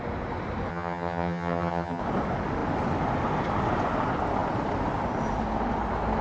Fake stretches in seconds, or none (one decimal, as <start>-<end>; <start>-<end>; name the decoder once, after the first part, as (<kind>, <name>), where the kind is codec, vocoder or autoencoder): 0.7-2.0 (vocoder, HiFi-GAN)